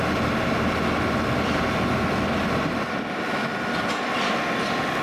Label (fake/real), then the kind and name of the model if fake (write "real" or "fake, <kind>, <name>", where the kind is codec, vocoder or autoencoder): real